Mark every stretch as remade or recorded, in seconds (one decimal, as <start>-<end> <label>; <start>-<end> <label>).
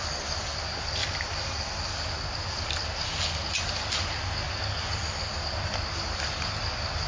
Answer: 0.0-7.1 recorded